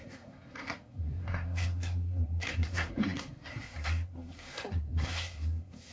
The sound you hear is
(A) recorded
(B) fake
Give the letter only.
B